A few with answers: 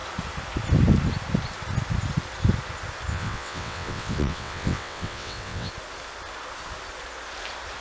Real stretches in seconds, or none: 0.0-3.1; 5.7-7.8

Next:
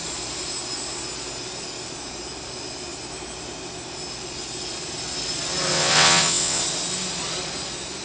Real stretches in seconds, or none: 0.0-5.7; 6.6-8.0

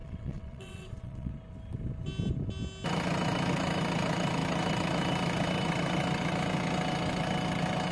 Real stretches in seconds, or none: 1.3-7.9